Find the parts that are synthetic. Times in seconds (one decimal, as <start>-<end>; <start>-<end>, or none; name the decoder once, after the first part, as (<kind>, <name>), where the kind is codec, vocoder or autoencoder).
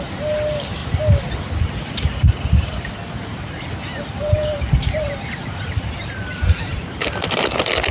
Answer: 3.3-6.8 (vocoder, BigVGAN v2)